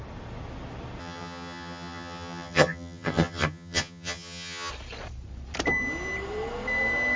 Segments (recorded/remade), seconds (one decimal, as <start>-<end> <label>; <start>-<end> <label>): 0.0-1.0 recorded; 1.0-4.7 remade; 4.7-7.2 recorded